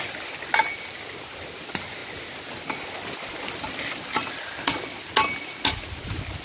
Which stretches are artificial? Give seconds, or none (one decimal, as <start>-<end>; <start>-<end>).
none